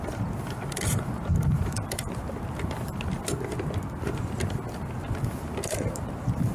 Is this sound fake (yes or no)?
no